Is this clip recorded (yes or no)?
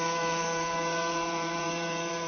no